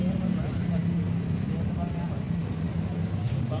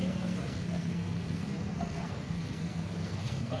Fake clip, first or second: second